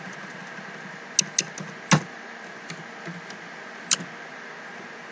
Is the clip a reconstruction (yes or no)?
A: no